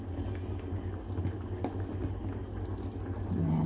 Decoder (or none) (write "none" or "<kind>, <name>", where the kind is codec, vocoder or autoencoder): none